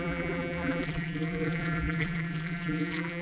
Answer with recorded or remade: remade